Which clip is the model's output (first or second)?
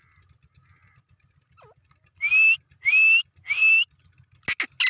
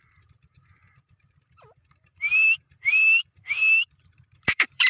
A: second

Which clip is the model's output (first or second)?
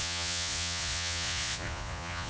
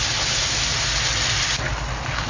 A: first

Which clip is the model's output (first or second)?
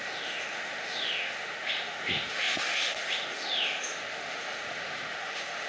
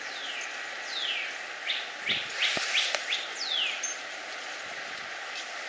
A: first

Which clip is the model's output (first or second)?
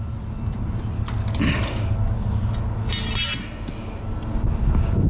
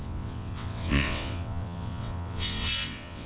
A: second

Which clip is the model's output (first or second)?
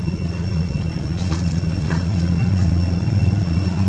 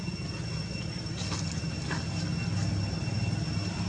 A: first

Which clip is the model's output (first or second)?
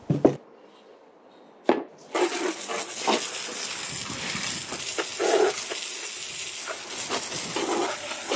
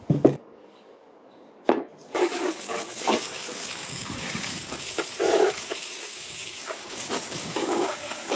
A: second